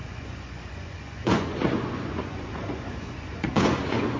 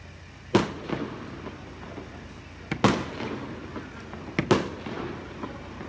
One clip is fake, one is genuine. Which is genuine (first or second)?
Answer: second